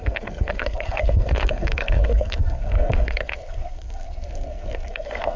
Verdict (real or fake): fake